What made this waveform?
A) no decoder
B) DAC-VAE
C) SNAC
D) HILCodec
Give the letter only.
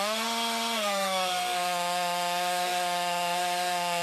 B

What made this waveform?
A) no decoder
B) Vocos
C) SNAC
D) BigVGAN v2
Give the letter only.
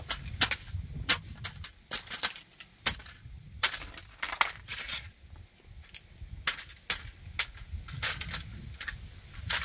A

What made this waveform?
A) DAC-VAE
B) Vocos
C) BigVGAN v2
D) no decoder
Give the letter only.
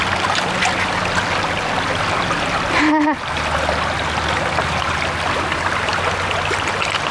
D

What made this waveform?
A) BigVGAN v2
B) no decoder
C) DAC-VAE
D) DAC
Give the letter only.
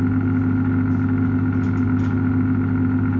B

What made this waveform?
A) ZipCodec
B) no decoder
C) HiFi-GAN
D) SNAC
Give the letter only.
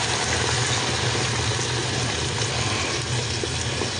B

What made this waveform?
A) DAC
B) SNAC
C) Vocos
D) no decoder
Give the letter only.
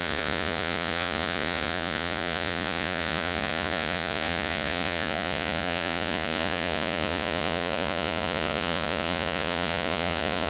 C